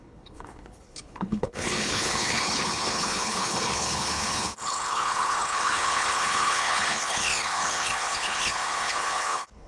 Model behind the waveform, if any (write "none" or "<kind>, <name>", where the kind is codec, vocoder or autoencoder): codec, HILCodec